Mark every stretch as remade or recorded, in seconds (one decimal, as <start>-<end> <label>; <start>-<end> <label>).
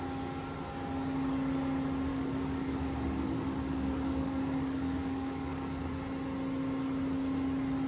0.0-2.1 recorded; 2.1-5.9 remade; 5.9-7.9 recorded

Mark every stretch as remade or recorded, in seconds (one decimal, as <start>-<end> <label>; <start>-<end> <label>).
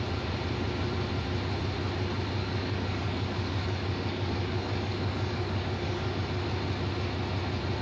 0.0-2.4 recorded; 2.4-6.2 remade; 6.2-7.8 recorded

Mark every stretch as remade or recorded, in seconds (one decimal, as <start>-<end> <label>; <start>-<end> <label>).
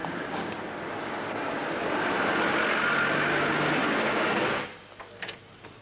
0.0-0.6 remade; 0.6-3.8 recorded; 3.8-4.5 remade; 4.5-5.8 recorded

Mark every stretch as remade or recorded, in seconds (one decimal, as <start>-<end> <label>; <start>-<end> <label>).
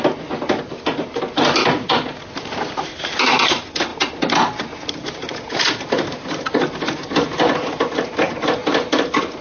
0.0-9.4 recorded